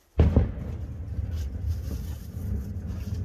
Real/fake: real